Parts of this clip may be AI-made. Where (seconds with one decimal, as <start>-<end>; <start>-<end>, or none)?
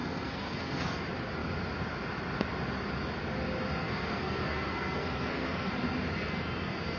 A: 0.0-0.9; 3.8-5.7